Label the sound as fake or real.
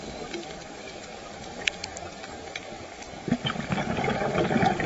fake